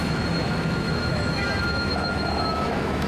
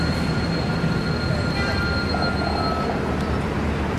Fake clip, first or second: first